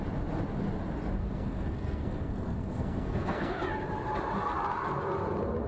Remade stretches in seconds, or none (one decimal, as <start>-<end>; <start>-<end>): 1.2-3.6